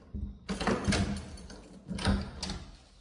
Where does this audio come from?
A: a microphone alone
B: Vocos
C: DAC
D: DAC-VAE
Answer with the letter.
A